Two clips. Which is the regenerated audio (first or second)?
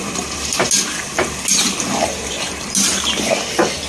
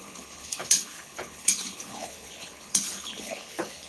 second